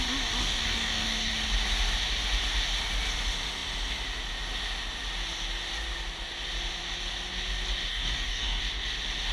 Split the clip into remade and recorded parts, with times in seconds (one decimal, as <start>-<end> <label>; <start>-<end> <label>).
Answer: 0.0-0.4 recorded; 0.4-1.3 remade; 1.3-7.9 recorded; 7.9-8.6 remade; 8.6-9.3 recorded